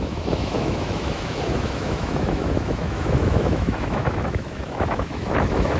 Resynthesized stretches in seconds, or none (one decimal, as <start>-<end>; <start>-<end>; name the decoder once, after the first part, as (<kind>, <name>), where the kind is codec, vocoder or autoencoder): 0.0-5.8 (autoencoder, DAC-VAE)